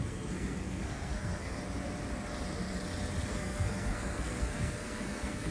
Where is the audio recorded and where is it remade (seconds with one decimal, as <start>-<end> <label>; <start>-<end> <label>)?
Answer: 0.0-1.6 remade; 1.6-3.3 recorded; 3.3-5.5 remade